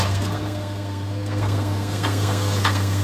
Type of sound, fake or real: fake